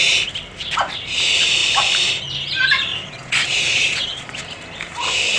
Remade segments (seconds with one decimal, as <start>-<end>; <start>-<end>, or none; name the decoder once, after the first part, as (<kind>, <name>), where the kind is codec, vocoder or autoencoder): 2.9-4.4 (vocoder, Vocos)